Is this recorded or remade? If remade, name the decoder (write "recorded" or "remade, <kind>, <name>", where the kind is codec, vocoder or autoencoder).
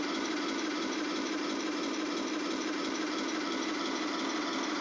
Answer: remade, vocoder, BigVGAN v2